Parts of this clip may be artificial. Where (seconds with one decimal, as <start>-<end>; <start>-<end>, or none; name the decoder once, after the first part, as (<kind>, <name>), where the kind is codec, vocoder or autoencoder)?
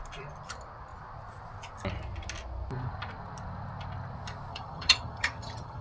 4.5-5.8 (vocoder, HiFi-GAN)